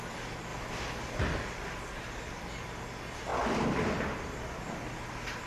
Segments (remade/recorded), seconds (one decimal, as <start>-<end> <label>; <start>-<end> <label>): 0.0-0.5 recorded; 0.5-1.2 remade; 1.2-3.3 recorded; 3.3-5.5 remade